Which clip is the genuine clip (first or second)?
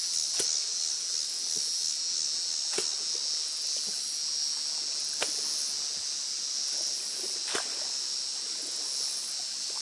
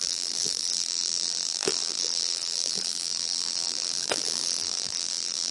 first